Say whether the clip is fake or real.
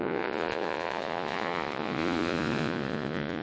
fake